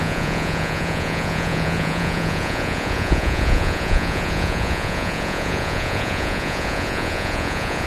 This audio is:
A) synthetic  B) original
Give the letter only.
A